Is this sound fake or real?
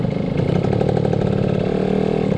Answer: real